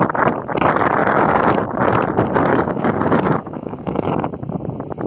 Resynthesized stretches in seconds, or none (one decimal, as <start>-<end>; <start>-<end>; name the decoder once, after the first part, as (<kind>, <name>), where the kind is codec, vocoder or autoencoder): 1.0-1.8 (codec, DAC); 2.5-4.3